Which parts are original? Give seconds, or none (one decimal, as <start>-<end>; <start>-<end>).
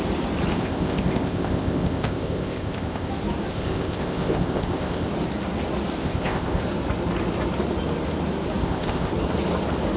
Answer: 0.0-0.5; 3.1-3.5; 5.1-6.0; 6.6-8.6; 9.1-10.0